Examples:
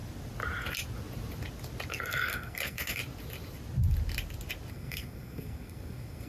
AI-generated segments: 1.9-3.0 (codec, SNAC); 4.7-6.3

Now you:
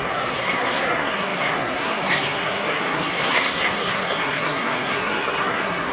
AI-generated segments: 0.0-5.9 (codec, SNAC)

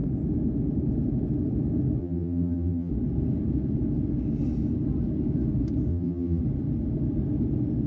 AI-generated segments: 2.0-2.9 (vocoder, BigVGAN v2); 5.9-6.4

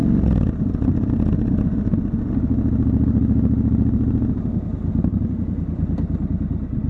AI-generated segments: 0.0-2.3 (vocoder, BigVGAN v2); 4.9-6.9